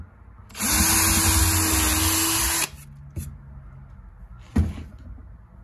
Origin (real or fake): real